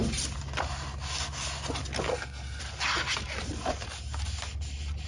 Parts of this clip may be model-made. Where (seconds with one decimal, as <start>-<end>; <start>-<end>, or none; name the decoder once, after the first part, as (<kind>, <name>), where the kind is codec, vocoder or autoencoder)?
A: 2.1-2.6 (codec, SNAC)